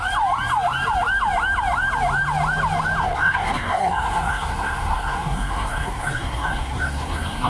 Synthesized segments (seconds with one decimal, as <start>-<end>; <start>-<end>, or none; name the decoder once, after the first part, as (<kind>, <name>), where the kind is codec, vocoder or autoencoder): 3.0-7.5 (codec, SNAC)